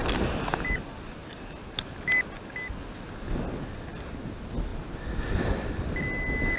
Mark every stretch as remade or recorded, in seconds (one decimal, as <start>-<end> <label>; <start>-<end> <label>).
0.0-6.6 recorded

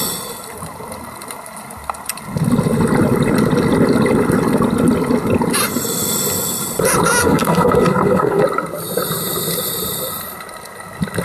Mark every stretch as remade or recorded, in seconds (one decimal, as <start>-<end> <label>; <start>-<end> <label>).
0.0-7.2 recorded; 7.2-8.4 remade; 8.4-11.2 recorded

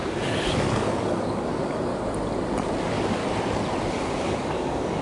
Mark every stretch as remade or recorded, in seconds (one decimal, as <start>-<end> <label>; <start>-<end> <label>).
0.0-1.9 remade; 1.9-2.8 recorded; 2.8-3.2 remade; 3.2-3.9 recorded; 3.9-5.0 remade

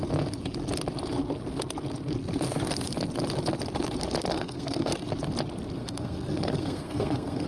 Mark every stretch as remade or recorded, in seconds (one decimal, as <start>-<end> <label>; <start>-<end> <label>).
0.0-4.3 recorded; 4.3-4.9 remade; 4.9-5.8 recorded; 5.8-7.5 remade